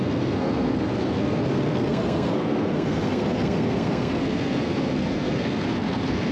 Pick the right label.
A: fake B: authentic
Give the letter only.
A